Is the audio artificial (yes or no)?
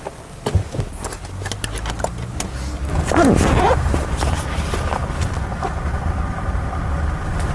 no